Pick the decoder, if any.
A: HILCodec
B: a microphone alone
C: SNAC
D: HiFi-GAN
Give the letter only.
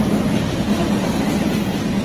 B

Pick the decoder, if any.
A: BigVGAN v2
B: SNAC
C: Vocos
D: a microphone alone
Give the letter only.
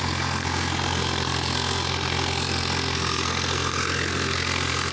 B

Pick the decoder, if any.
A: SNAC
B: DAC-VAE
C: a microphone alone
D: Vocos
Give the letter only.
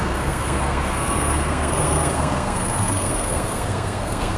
A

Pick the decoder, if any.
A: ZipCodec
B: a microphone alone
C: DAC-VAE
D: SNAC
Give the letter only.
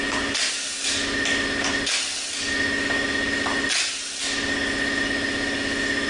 B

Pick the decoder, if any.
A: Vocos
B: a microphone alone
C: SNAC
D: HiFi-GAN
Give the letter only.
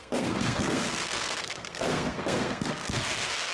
C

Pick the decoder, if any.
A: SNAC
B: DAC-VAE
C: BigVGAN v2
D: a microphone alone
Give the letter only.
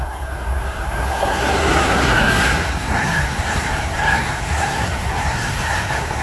A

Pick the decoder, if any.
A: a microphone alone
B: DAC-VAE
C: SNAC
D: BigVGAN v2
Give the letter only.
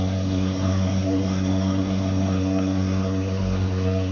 C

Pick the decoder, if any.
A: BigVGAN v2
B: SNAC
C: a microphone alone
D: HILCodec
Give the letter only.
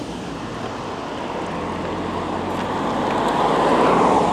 C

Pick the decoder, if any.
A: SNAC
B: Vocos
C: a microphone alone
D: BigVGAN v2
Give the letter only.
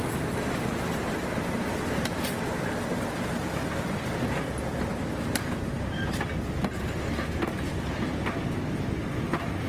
C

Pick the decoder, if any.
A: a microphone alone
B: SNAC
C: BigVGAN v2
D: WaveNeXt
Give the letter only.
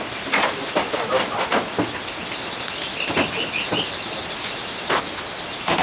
A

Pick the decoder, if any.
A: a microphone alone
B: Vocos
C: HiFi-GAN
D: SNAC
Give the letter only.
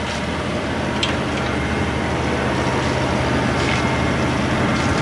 A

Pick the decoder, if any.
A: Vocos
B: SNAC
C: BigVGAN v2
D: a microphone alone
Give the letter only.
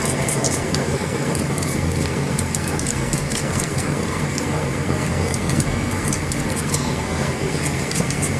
B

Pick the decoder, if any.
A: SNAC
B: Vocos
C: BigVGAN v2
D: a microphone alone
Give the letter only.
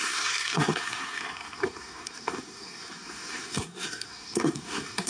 A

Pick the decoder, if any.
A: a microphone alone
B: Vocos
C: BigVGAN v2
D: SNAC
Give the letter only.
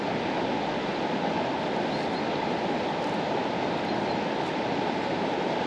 A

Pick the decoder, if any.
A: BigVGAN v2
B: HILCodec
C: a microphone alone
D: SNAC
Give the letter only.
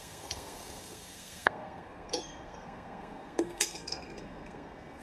D